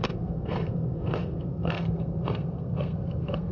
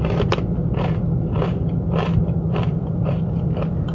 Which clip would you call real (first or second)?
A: second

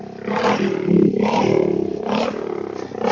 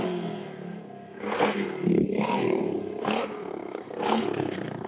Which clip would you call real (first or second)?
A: first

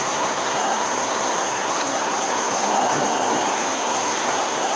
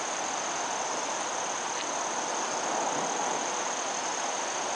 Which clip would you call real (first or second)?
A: second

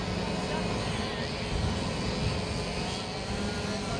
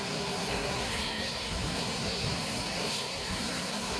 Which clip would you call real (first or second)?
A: first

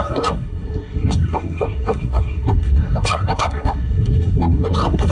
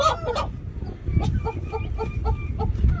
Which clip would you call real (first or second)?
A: second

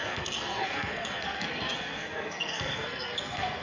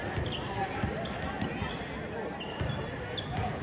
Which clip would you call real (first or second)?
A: second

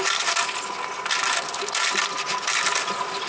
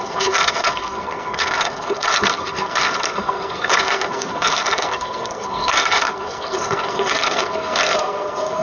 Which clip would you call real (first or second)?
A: first